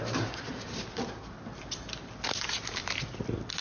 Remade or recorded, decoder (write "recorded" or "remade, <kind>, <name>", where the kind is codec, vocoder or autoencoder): recorded